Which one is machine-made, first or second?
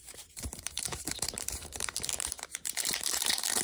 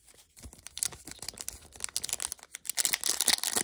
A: first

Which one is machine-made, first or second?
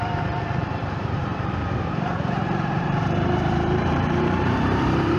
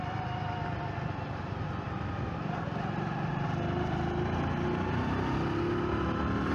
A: first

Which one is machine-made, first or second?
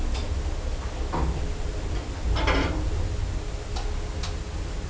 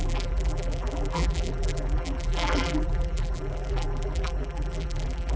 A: second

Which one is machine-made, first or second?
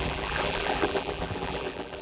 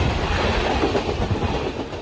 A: first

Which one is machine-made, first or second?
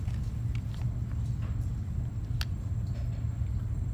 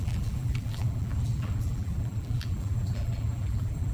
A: second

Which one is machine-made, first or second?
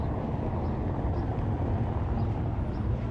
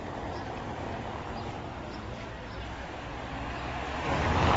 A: second